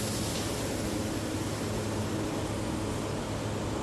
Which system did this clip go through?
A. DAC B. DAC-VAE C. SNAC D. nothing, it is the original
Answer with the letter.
D